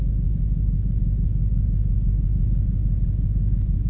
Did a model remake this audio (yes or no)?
no